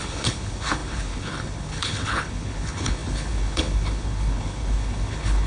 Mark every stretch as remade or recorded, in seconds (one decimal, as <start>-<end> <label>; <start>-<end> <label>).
0.0-5.5 remade